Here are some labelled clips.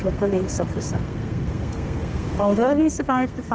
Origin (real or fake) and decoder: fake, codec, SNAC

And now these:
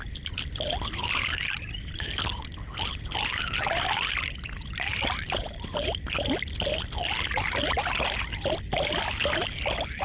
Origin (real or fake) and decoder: real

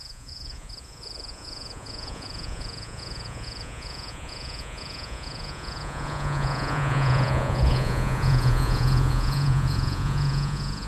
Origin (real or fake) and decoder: fake, vocoder, Vocos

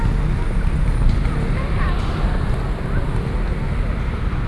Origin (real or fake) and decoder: real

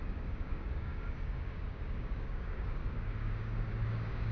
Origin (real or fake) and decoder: fake, codec, DAC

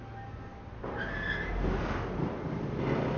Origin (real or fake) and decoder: real